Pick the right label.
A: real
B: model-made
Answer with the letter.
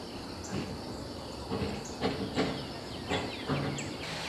A